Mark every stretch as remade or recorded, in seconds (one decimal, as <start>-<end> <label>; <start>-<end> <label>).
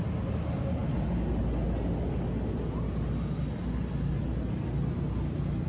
0.0-5.7 recorded